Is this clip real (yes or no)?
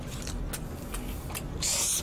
yes